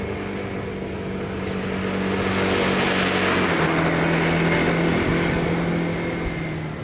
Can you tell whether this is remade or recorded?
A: recorded